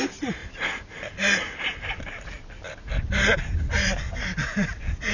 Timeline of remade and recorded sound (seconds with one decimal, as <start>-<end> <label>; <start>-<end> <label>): 0.0-5.1 recorded